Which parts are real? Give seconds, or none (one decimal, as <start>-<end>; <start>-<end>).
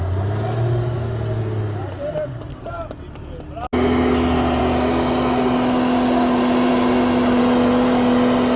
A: 0.0-8.6